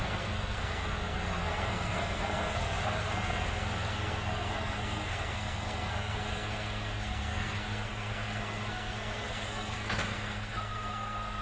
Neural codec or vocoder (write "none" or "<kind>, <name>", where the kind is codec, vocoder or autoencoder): codec, SNAC